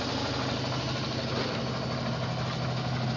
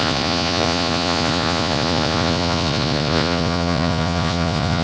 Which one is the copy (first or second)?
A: second